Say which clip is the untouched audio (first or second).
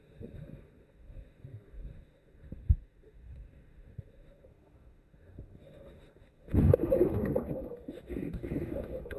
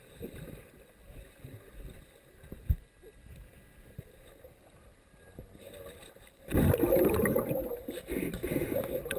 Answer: second